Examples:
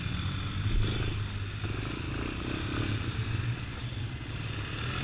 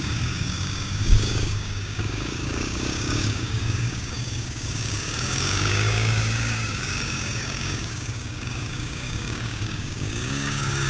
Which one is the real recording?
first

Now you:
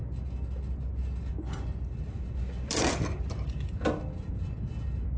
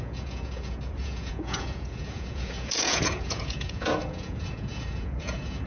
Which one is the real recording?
first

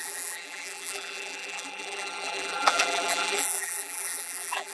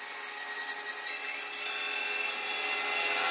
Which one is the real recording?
second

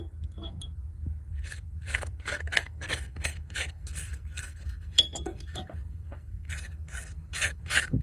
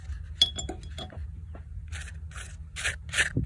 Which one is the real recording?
second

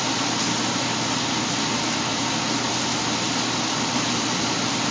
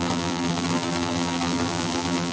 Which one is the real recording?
first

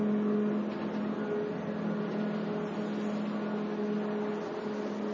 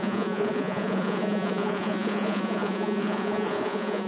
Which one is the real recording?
first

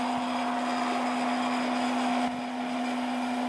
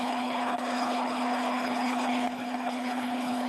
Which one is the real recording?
first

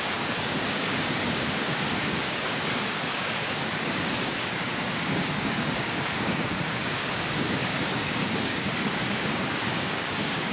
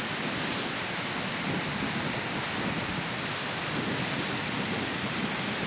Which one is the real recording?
second